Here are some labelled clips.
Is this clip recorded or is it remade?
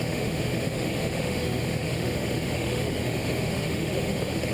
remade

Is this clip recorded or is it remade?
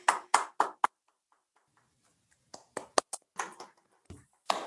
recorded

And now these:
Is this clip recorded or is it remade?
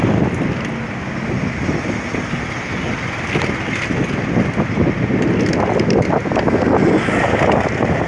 recorded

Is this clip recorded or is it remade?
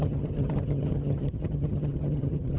remade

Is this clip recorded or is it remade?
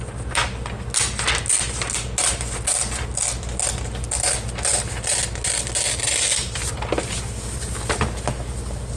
recorded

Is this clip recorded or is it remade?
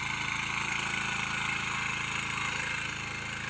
recorded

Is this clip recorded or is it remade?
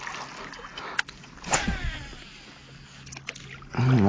recorded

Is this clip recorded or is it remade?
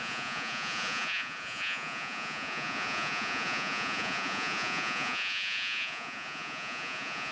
remade